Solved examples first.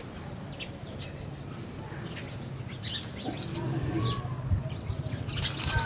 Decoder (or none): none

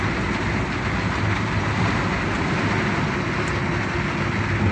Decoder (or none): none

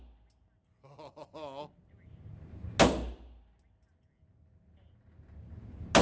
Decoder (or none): none